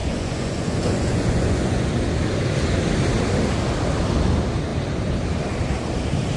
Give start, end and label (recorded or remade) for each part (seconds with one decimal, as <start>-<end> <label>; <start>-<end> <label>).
0.0-1.9 remade; 1.9-6.4 recorded